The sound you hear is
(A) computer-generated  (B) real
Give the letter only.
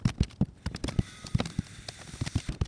B